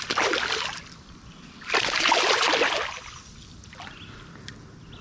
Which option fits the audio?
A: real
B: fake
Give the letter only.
A